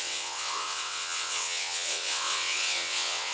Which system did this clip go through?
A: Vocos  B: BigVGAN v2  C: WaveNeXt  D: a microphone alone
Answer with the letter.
C